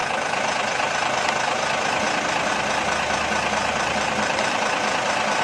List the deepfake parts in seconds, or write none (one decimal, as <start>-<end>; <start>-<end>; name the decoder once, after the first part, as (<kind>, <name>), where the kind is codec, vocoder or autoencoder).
3.6-5.4 (vocoder, BigVGAN v2)